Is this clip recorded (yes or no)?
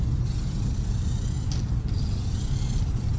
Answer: yes